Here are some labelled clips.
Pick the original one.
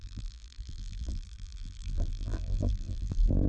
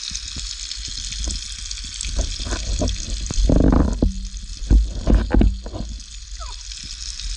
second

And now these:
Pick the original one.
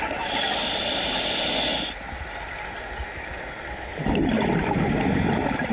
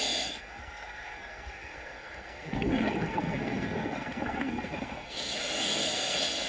first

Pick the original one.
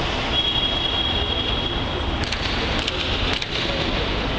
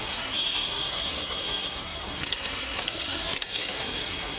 first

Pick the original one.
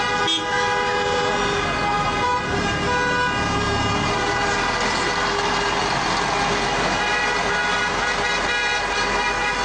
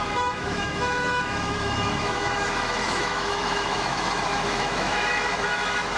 first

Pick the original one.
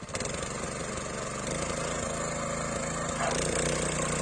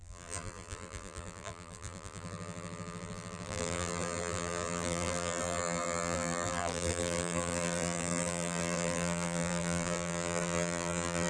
first